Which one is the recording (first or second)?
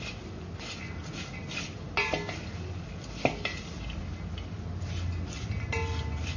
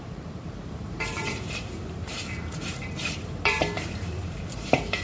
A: first